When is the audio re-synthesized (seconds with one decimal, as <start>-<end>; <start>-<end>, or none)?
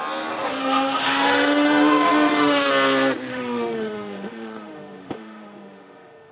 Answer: 0.6-2.7; 3.3-6.3